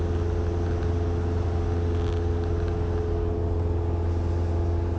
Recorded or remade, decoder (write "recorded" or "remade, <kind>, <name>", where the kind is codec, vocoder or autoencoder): recorded